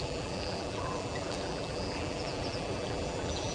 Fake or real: fake